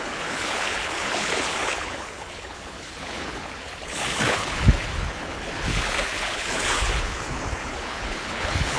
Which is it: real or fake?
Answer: fake